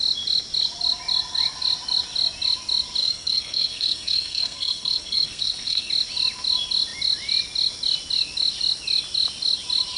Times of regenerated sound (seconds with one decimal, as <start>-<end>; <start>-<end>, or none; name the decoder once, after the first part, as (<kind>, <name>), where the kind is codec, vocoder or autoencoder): 3.0-5.9 (codec, SNAC)